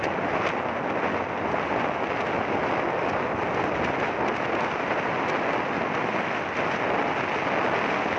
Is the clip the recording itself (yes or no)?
yes